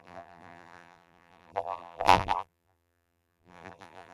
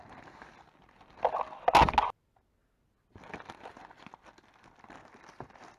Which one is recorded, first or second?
second